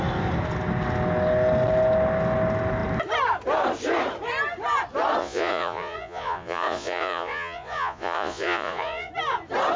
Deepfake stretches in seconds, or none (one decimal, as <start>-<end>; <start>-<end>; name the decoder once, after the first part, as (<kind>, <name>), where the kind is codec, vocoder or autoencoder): 5.2-9.1 (vocoder, Vocos)